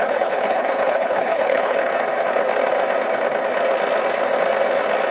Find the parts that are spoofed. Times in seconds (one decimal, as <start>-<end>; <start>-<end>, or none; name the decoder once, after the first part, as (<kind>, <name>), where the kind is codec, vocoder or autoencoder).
0.0-1.9 (codec, HILCodec)

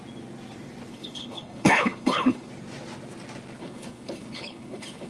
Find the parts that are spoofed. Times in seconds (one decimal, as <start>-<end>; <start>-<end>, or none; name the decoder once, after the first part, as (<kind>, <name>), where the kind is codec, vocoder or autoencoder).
0.9-2.5 (codec, HILCodec); 3.6-5.1

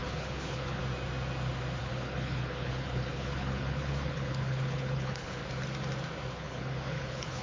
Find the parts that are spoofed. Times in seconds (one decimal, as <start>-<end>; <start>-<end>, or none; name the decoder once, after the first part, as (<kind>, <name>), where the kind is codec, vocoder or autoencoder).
0.0-0.8 (codec, HILCodec); 1.8-5.4; 6.3-7.4